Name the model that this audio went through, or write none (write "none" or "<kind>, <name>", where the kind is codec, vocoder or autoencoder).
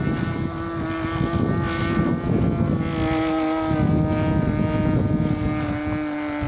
none